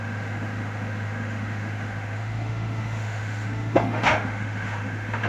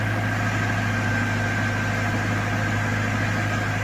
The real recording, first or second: second